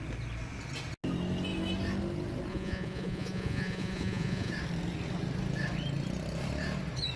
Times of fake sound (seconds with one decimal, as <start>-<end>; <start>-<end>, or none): 2.5-4.5